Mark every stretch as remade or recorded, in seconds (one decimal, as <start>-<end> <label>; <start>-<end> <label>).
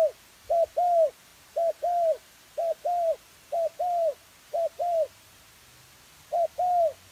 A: 0.0-1.3 recorded; 1.3-5.6 remade; 5.6-7.1 recorded